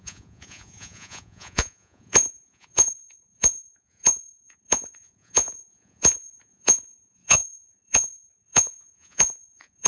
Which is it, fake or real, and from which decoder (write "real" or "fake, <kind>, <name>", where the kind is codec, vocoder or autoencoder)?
fake, vocoder, Vocos